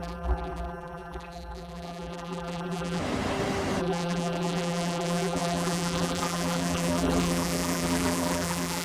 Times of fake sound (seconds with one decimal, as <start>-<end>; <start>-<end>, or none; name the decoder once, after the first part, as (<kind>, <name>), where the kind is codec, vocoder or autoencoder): 0.0-3.0 (vocoder, BigVGAN v2); 3.8-8.8